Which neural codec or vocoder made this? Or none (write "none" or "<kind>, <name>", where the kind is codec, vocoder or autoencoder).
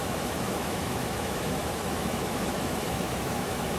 autoencoder, DAC-VAE